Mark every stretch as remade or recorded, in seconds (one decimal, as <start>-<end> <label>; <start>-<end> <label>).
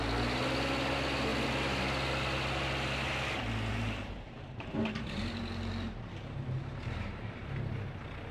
0.0-3.7 recorded; 3.7-7.7 remade; 7.7-8.3 recorded